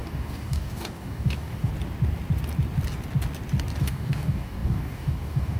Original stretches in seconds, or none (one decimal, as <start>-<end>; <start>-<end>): 1.7-3.8